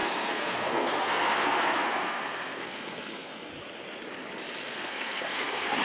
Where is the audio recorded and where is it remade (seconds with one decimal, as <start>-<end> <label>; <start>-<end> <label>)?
0.0-3.5 remade; 3.5-4.6 recorded; 4.6-5.8 remade